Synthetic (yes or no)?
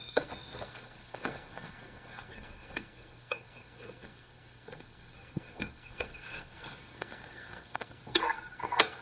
yes